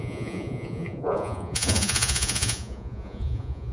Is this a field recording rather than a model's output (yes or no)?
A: no